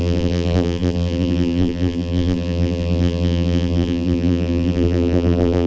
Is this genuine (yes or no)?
no